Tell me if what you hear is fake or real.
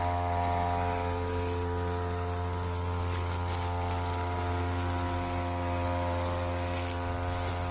real